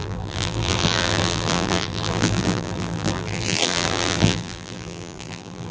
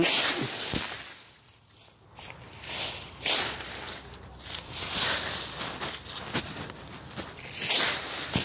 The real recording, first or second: second